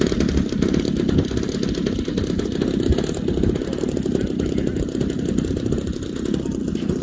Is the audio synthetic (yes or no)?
no